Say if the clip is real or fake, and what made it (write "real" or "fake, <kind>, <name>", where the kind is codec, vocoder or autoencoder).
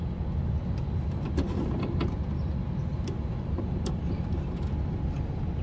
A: real